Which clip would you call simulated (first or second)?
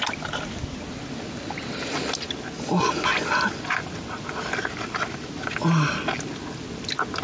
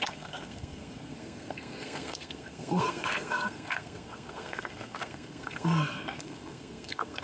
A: second